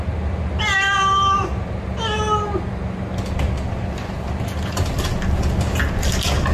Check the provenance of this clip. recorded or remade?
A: recorded